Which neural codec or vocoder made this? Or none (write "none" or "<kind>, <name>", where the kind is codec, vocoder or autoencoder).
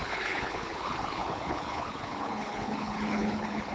codec, HILCodec